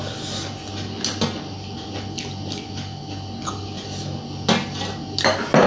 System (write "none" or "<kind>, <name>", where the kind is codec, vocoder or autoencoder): none